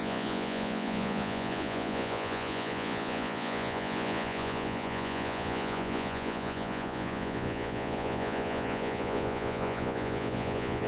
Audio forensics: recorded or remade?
remade